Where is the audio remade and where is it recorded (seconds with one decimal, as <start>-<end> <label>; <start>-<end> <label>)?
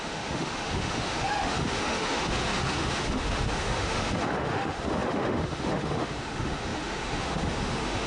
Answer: 0.0-8.1 remade